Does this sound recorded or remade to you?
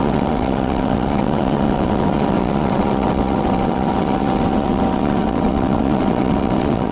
remade